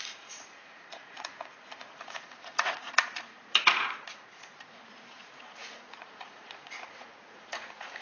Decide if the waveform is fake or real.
fake